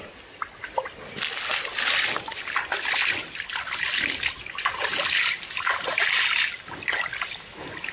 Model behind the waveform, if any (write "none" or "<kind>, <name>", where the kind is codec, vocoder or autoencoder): none